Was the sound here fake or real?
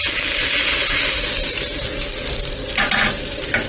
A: real